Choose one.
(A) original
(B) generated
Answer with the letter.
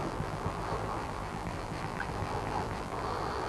B